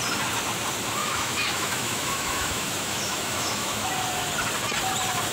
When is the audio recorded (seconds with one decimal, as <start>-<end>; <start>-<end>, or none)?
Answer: 0.0-1.0; 3.9-5.3